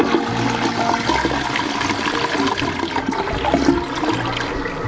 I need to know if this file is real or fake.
real